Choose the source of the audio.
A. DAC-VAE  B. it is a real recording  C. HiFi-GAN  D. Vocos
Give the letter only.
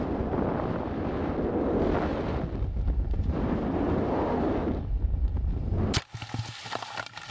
B